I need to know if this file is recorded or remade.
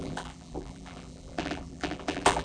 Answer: remade